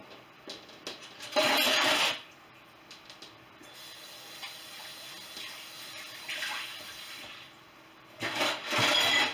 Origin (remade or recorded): recorded